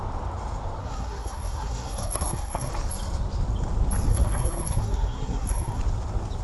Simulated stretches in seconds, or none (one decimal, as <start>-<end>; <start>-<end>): 0.8-2.7; 4.1-5.8